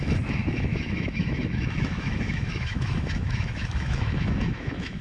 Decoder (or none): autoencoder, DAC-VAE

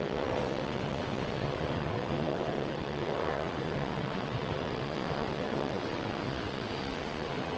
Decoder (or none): vocoder, WaveNeXt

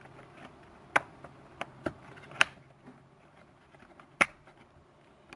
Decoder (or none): none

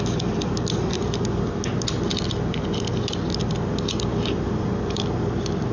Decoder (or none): none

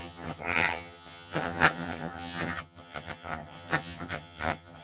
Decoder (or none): vocoder, HiFi-GAN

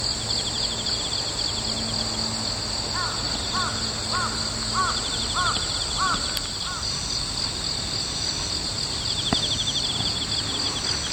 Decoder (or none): none